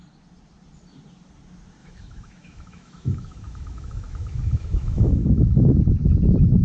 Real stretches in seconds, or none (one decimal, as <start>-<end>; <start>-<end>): 0.0-1.8; 5.8-6.6